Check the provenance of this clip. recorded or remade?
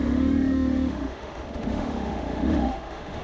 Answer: remade